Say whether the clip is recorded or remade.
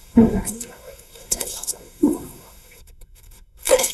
remade